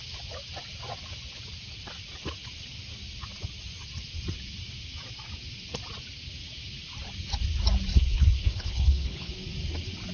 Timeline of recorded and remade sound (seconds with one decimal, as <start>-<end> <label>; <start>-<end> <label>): 0.0-7.9 recorded; 7.9-9.3 remade; 9.3-10.1 recorded